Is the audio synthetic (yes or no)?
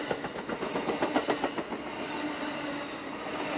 no